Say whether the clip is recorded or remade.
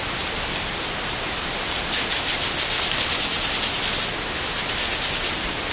recorded